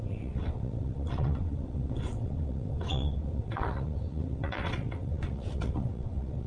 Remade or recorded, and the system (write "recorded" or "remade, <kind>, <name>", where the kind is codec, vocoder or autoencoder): remade, vocoder, WaveNeXt